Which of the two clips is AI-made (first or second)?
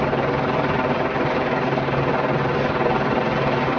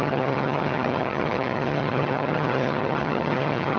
second